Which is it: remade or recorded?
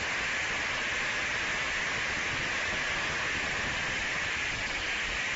remade